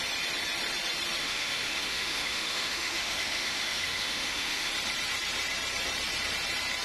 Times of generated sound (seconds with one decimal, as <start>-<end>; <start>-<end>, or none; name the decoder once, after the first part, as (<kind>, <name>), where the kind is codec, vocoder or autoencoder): 1.2-4.7 (autoencoder, DAC-VAE)